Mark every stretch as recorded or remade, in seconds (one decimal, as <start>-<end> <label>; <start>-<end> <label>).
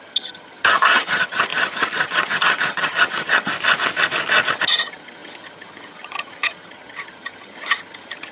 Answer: 0.0-3.5 remade; 3.5-4.5 recorded; 4.5-8.3 remade